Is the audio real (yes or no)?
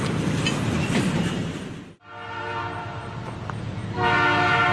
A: yes